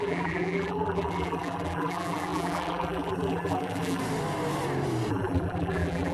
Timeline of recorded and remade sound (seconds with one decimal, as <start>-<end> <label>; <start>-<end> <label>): 0.0-4.0 remade; 4.0-5.1 recorded; 5.1-6.1 remade